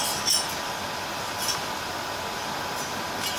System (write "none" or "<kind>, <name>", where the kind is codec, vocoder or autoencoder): none